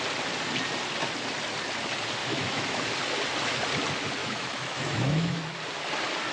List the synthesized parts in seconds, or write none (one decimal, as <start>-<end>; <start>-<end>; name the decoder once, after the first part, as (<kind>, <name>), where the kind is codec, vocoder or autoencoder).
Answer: 2.2-2.8 (autoencoder, DAC-VAE); 4.2-5.5